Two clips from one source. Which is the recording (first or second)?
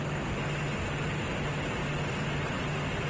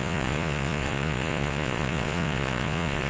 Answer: first